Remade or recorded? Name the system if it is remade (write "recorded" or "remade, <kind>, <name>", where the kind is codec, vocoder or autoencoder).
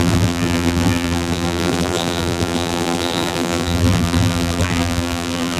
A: remade, vocoder, BigVGAN v2